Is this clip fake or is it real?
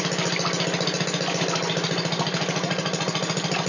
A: real